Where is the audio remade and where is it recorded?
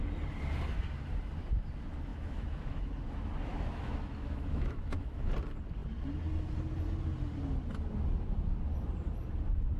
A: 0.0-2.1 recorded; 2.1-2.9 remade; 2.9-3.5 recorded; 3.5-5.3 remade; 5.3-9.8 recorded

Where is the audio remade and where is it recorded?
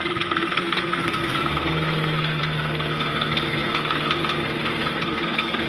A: 0.0-5.7 remade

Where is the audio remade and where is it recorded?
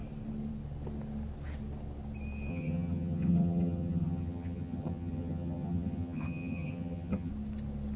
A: 0.0-2.5 recorded; 2.5-7.3 remade; 7.3-8.0 recorded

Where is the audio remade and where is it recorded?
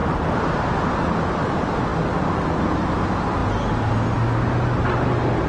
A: 0.0-5.5 recorded